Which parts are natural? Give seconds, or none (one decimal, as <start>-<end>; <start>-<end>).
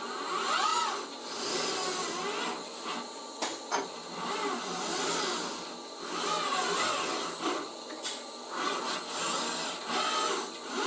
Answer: 0.0-10.9